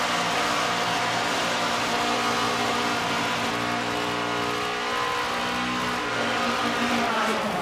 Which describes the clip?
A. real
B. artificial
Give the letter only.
A